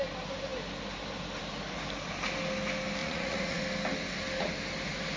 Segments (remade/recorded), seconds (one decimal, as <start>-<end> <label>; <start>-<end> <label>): 0.0-3.0 recorded; 3.0-3.6 remade; 3.6-5.2 recorded